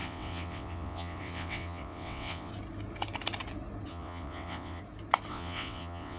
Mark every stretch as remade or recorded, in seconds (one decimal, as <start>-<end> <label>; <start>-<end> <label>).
0.0-2.5 remade; 2.5-3.9 recorded; 3.9-4.8 remade; 4.8-5.3 recorded; 5.3-6.2 remade